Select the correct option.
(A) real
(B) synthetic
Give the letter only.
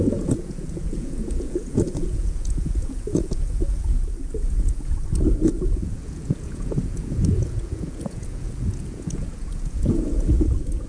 B